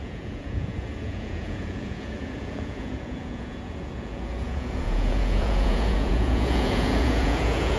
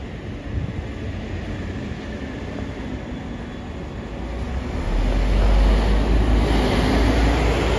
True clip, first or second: second